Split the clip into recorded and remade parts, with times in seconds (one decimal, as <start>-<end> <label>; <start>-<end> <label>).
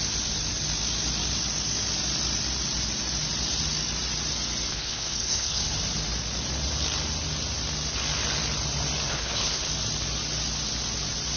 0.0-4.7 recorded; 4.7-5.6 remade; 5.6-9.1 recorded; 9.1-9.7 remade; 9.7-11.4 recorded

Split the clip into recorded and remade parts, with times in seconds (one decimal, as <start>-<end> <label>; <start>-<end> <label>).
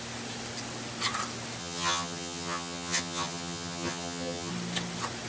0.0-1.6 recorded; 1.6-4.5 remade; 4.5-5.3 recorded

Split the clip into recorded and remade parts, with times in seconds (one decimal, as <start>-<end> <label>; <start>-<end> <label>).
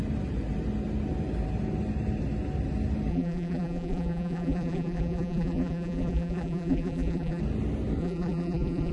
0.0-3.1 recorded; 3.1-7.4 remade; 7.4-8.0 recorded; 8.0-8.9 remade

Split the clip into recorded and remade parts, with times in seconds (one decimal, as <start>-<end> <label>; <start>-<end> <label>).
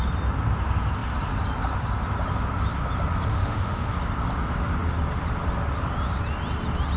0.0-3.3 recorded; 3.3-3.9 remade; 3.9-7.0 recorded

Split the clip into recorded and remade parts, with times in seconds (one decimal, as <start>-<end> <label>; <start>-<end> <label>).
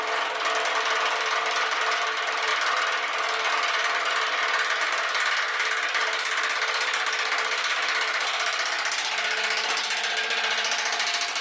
0.0-11.4 recorded